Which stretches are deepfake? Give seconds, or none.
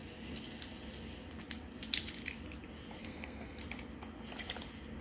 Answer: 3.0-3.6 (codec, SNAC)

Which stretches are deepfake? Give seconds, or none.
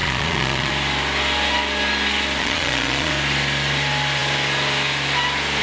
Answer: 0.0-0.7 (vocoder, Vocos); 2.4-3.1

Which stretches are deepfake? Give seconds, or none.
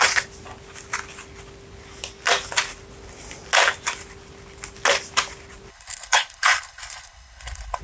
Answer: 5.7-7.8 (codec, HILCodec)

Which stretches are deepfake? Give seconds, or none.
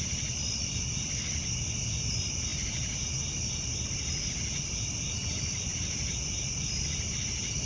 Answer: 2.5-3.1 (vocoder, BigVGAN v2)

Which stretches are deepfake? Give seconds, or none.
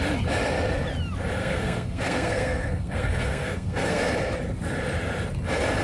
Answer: 1.4-4.1 (codec, SNAC)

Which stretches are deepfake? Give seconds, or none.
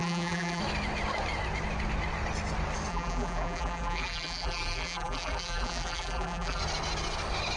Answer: 0.0-0.6 (vocoder, BigVGAN v2); 2.9-6.6